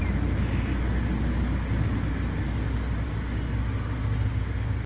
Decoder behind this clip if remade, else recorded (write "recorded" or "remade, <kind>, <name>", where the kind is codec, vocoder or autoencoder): recorded